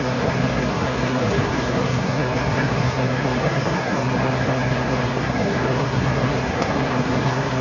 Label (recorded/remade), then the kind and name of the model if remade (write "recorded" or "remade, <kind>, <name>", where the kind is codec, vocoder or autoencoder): remade, codec, SNAC